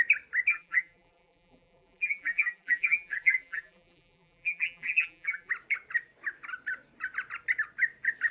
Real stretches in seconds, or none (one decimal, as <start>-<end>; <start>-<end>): 0.0-0.5; 5.5-8.3